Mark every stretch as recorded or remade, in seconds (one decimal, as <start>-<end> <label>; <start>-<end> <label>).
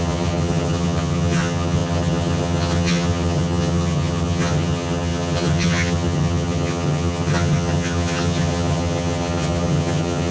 0.0-10.3 remade